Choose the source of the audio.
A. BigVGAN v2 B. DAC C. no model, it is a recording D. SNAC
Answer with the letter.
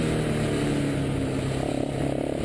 C